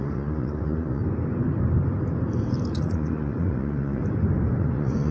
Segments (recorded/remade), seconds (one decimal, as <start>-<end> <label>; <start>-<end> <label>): 0.0-1.0 remade; 1.0-2.7 recorded; 2.7-4.0 remade; 4.0-4.6 recorded; 4.6-5.1 remade